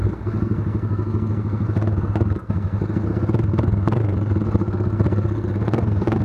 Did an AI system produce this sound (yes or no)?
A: yes